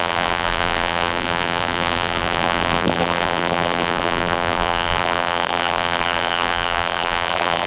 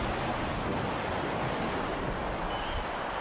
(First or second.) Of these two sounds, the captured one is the second